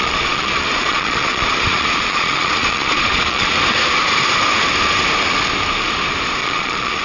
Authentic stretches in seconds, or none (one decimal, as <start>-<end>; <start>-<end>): 3.5-6.4